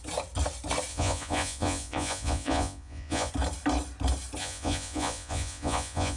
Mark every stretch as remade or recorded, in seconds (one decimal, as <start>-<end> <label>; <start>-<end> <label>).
0.0-0.9 recorded; 0.9-3.3 remade; 3.3-4.4 recorded; 4.4-6.2 remade